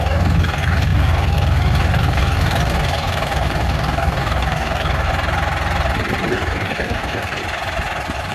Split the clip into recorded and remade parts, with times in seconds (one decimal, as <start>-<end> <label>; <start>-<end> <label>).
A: 0.0-5.1 remade; 5.1-6.3 recorded; 6.3-7.4 remade; 7.4-8.3 recorded